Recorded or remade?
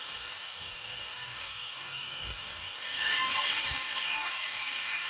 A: remade